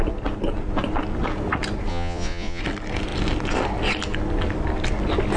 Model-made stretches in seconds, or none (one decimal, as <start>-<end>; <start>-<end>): 1.9-2.6